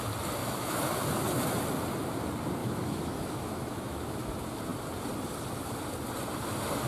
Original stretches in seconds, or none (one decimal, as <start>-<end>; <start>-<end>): 0.0-0.4; 0.9-2.6; 4.3-6.9